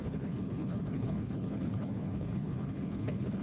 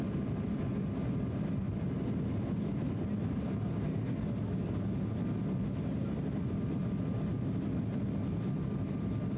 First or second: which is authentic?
second